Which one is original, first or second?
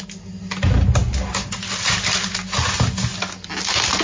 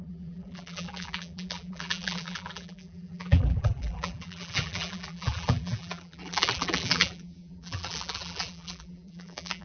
first